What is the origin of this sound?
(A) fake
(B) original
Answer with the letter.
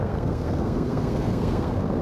A